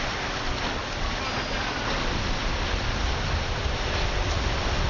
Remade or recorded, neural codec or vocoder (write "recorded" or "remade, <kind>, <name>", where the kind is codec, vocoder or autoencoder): recorded